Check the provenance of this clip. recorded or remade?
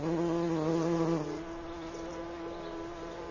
recorded